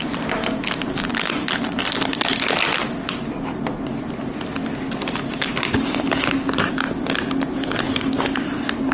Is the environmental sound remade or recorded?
recorded